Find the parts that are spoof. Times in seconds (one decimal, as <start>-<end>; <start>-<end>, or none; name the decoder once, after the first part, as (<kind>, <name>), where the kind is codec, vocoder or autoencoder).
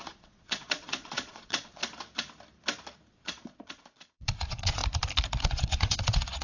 0.0-1.8 (vocoder, Vocos); 3.1-4.8; 5.4-6.4